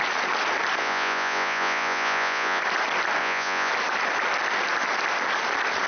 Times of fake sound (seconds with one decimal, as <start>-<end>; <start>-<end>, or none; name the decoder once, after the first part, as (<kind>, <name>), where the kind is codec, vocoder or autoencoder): 0.8-2.6 (vocoder, Vocos); 3.2-3.7